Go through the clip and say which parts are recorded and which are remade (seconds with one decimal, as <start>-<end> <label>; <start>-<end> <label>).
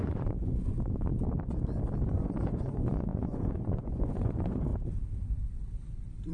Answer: 0.0-1.1 remade; 1.1-2.1 recorded; 2.1-4.7 remade; 4.7-6.3 recorded